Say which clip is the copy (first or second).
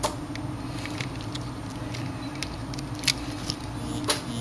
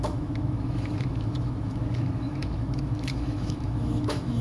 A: second